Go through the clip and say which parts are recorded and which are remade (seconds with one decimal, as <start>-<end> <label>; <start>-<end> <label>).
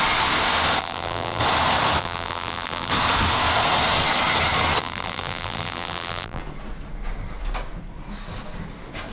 0.0-0.8 recorded; 0.8-1.4 remade; 1.4-2.0 recorded; 2.0-2.9 remade; 2.9-4.8 recorded; 4.8-6.4 remade; 6.4-9.1 recorded